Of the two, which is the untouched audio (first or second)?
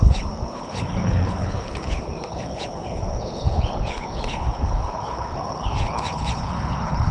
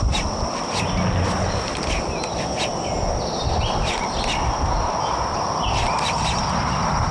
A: second